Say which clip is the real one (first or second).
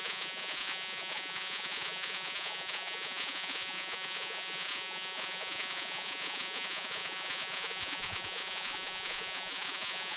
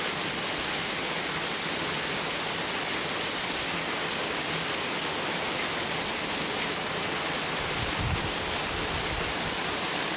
second